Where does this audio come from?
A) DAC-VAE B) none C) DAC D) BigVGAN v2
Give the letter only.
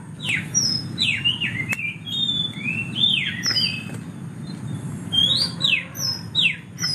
D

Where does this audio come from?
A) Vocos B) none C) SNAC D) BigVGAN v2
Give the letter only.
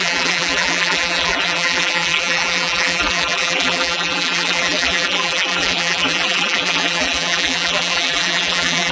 D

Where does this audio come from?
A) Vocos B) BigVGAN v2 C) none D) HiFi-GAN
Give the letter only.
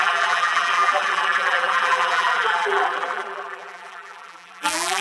B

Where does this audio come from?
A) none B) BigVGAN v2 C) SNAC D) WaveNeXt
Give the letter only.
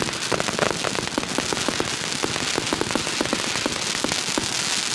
A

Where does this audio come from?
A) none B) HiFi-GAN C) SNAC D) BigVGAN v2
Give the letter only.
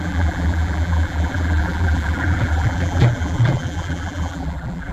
D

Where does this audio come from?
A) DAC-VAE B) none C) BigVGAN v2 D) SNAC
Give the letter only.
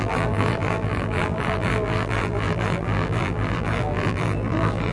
C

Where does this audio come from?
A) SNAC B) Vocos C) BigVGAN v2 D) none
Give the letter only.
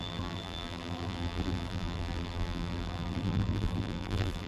C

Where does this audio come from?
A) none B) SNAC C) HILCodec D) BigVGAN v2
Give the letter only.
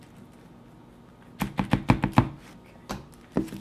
A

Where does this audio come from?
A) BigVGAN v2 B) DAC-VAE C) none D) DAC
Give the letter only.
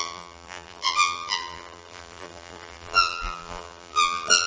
A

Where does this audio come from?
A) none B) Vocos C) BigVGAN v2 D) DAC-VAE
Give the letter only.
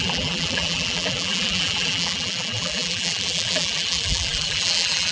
C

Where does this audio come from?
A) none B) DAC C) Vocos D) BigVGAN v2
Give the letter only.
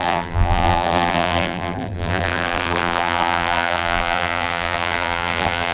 D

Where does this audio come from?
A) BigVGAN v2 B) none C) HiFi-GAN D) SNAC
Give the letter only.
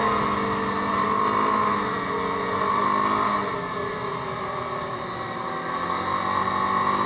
B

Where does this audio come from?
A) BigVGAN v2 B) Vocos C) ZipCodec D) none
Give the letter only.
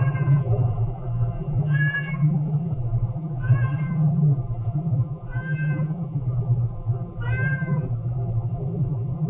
A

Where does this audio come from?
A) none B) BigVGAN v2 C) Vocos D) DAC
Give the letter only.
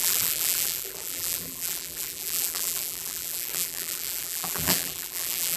B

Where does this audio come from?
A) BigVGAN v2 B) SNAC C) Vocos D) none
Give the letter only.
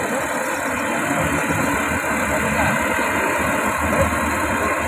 D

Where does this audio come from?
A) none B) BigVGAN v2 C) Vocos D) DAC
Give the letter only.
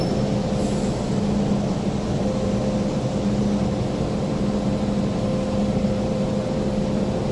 A